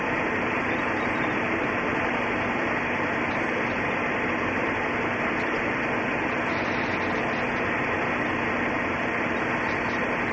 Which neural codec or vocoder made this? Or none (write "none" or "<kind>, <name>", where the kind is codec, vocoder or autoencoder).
none